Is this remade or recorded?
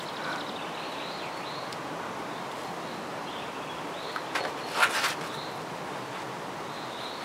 recorded